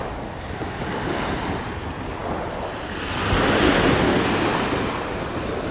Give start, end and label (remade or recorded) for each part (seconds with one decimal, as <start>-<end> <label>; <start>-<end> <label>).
0.0-5.7 recorded